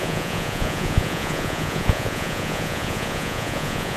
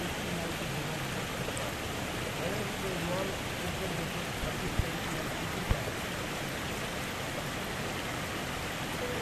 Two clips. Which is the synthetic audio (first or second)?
first